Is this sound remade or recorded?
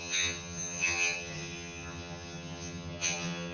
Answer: remade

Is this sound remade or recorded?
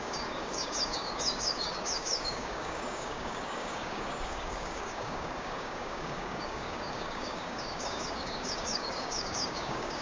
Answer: remade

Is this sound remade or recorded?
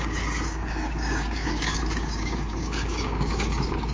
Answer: remade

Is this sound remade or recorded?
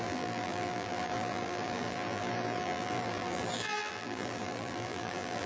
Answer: remade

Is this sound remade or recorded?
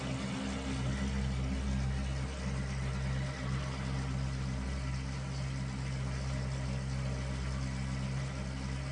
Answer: recorded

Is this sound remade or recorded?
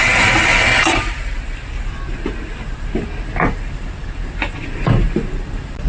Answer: recorded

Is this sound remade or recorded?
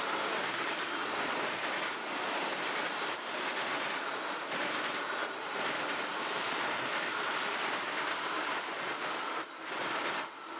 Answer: recorded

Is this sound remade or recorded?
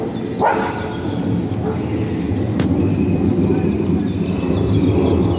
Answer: recorded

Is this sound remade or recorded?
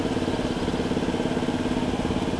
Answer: recorded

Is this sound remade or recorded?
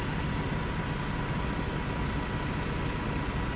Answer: recorded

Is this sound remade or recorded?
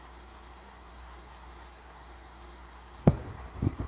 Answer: remade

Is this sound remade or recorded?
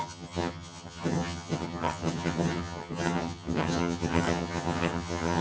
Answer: remade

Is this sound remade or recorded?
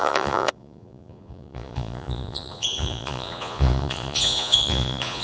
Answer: remade